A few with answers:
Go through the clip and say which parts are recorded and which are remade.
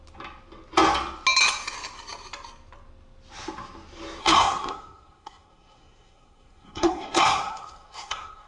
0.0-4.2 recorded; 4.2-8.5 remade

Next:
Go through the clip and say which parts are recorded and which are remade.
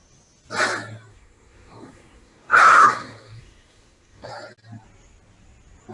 0.0-1.1 recorded; 1.1-4.3 remade; 4.3-5.9 recorded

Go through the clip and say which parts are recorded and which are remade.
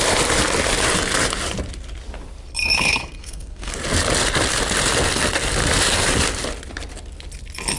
0.0-2.6 recorded; 2.6-3.7 remade; 3.7-7.8 recorded